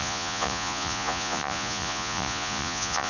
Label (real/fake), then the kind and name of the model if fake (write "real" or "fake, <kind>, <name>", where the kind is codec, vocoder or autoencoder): fake, vocoder, Vocos